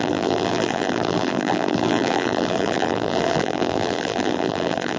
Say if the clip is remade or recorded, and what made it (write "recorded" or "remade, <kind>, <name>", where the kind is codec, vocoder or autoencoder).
remade, vocoder, BigVGAN v2